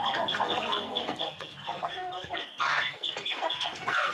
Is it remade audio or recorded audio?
remade